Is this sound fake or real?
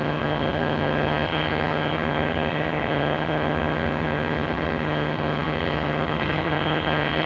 fake